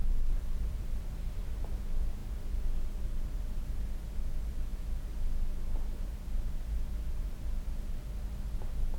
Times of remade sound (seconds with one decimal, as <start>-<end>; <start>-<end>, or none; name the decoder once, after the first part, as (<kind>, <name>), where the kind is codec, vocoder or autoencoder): 0.0-1.0 (vocoder, BigVGAN v2)

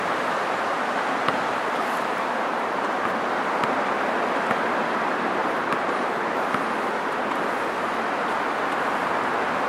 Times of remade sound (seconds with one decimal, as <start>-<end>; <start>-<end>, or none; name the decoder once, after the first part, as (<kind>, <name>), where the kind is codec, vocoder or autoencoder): 1.2-3.3 (vocoder, BigVGAN v2); 5.4-6.6

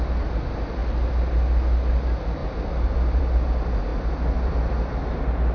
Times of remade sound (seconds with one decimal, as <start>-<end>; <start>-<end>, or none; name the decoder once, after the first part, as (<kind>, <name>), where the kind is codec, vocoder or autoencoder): 2.4-3.2 (vocoder, BigVGAN v2); 3.9-4.5

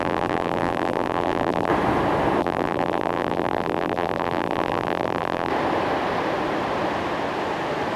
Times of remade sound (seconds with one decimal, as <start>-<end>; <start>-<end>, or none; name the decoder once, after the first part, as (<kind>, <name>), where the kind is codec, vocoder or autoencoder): 0.0-1.7 (vocoder, BigVGAN v2); 2.4-5.5

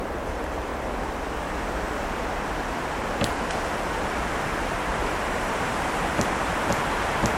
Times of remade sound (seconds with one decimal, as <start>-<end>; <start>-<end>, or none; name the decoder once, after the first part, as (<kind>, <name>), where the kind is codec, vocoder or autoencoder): 0.0-0.7 (vocoder, BigVGAN v2); 4.6-7.4

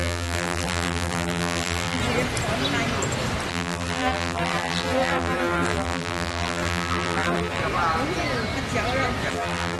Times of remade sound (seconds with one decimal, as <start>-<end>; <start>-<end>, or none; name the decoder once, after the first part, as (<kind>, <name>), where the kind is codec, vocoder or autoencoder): 0.0-2.0 (vocoder, BigVGAN v2); 3.5-7.6; 9.3-9.8